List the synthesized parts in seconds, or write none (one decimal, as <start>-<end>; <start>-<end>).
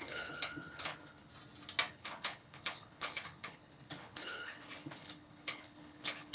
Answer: 0.0-1.3; 1.9-6.3